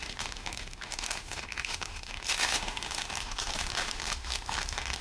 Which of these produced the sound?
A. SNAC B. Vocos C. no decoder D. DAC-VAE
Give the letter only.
D